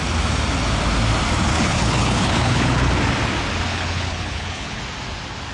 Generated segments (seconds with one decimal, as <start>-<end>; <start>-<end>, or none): 1.5-2.9; 3.7-4.8